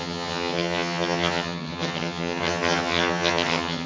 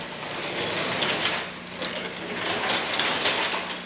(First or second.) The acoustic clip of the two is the second